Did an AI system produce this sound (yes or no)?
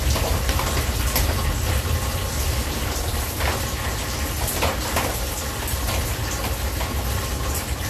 no